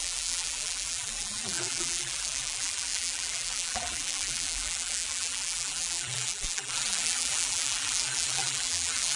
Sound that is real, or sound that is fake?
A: fake